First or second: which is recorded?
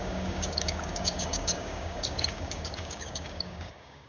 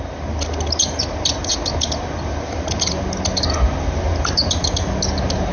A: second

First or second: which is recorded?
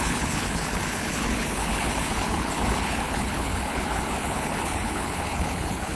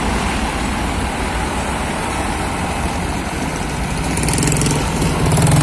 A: second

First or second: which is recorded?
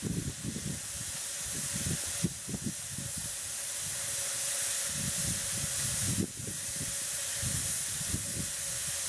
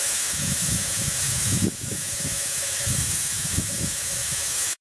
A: first